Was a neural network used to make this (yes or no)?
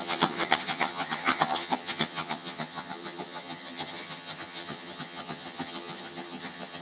yes